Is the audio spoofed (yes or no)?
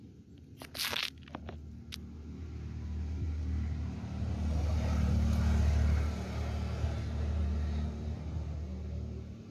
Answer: no